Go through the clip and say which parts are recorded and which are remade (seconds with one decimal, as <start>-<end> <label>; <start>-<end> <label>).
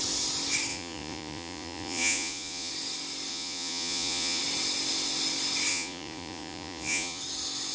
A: 0.0-0.7 recorded; 0.7-2.7 remade; 2.7-3.3 recorded; 3.3-4.4 remade; 4.4-5.7 recorded; 5.7-7.2 remade; 7.2-7.7 recorded